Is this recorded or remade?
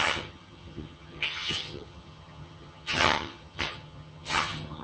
remade